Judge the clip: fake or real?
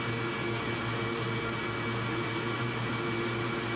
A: real